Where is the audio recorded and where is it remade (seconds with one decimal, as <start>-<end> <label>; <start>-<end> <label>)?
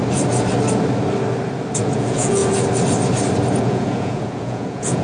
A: 0.0-1.8 recorded; 1.8-2.4 remade; 2.4-3.6 recorded; 3.6-5.0 remade